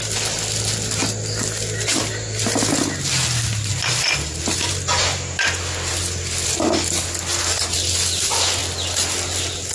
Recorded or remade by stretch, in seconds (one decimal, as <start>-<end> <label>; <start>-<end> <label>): 0.0-9.7 recorded